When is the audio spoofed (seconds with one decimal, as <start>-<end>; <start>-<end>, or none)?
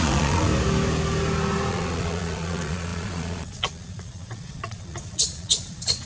0.0-0.5; 1.7-6.1